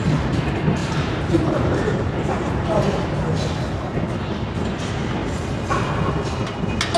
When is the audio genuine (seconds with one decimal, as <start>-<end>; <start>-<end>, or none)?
0.0-0.8; 3.1-7.0